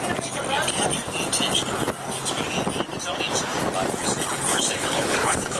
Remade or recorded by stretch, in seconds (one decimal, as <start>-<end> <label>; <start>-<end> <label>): 0.0-4.5 recorded; 4.5-5.6 remade